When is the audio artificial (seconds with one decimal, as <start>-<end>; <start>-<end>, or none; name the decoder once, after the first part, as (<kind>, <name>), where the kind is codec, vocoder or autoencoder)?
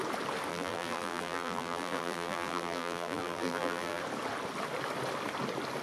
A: 0.5-4.0 (vocoder, BigVGAN v2)